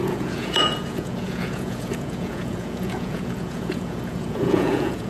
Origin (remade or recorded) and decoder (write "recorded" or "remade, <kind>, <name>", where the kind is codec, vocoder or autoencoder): remade, vocoder, Vocos